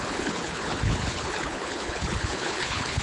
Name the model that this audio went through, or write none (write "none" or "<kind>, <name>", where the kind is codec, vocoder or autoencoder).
codec, HILCodec